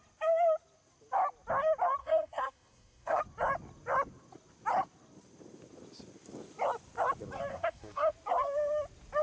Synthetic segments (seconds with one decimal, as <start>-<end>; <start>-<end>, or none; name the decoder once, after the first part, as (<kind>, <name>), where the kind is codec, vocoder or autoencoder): 2.0-3.2 (codec, SNAC); 7.5-8.1